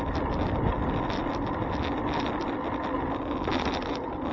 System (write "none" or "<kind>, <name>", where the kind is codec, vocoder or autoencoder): none